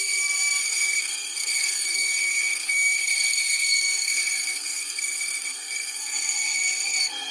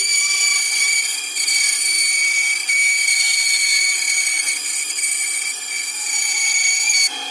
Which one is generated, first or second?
first